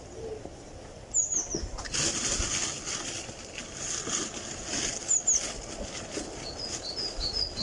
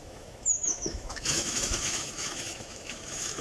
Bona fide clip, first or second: first